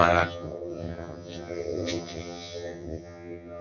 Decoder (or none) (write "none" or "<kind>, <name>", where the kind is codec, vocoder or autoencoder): vocoder, HiFi-GAN